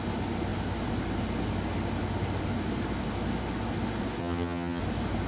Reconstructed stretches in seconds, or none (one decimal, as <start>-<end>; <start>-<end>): 4.2-4.8